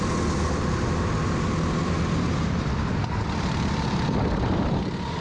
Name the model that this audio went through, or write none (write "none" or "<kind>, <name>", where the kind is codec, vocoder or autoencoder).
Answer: none